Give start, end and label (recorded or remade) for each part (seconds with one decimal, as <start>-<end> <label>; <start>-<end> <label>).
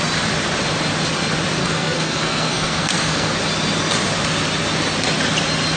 0.0-1.6 recorded; 1.6-3.4 remade; 3.4-5.8 recorded